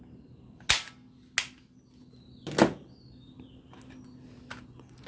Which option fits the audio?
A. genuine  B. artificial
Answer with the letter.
A